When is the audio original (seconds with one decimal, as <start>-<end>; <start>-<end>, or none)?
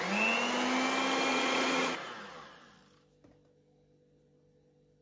0.0-1.3; 2.1-5.0